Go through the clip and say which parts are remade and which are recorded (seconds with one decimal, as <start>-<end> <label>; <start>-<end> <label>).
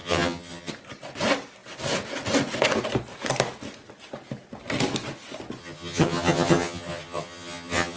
0.0-0.7 remade; 0.7-5.6 recorded; 5.6-8.0 remade